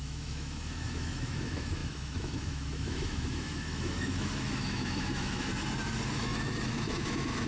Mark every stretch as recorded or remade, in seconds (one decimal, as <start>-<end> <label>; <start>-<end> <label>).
0.0-5.5 remade; 5.5-6.1 recorded; 6.1-7.5 remade